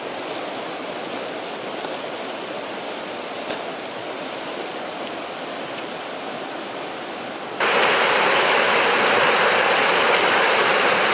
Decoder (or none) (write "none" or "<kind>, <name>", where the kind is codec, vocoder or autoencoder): none